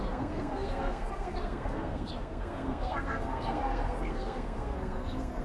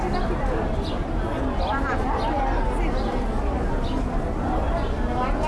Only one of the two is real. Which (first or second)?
second